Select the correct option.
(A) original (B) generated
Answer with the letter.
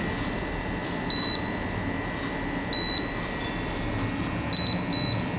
A